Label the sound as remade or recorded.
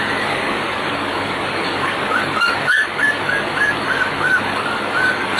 remade